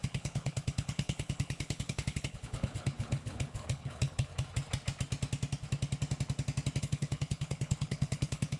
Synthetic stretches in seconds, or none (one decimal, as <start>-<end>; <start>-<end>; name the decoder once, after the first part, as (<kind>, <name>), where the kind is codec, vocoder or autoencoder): 0.0-4.3 (codec, HILCodec); 6.8-8.6